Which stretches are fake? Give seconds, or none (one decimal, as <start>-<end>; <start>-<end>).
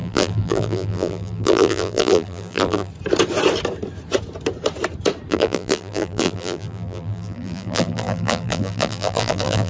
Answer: 0.0-2.9; 5.3-9.7